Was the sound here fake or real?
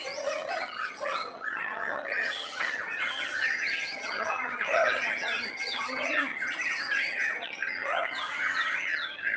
fake